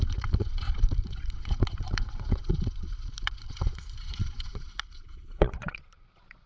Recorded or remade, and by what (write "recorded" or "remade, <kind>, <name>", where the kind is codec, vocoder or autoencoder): remade, vocoder, Vocos